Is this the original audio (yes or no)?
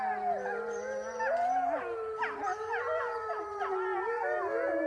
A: yes